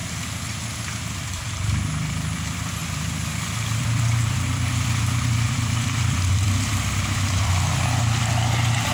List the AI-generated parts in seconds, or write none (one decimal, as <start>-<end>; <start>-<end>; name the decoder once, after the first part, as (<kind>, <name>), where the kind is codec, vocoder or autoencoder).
1.1-8.9 (vocoder, BigVGAN v2)